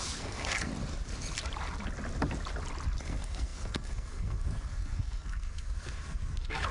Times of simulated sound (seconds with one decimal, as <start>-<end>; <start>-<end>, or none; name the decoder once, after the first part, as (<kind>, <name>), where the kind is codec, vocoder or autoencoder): 0.0-0.7 (codec, SNAC); 3.0-6.7